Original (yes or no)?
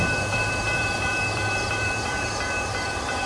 no